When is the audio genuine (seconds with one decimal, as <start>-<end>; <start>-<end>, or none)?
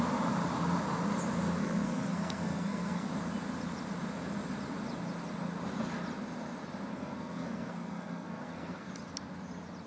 0.0-1.6; 3.1-6.9; 8.9-9.9